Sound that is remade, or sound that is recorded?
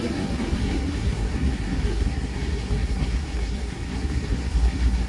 remade